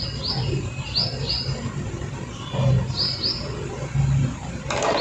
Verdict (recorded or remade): recorded